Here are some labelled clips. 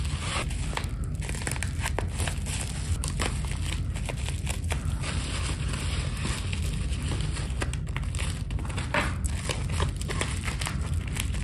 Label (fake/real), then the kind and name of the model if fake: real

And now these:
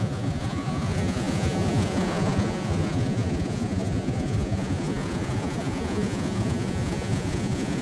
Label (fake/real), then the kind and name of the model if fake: fake, vocoder, Vocos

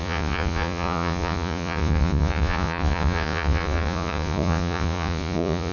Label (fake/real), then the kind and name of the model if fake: fake, vocoder, Vocos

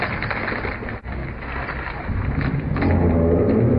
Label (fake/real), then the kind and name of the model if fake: real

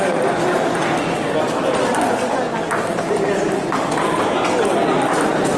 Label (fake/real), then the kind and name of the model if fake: real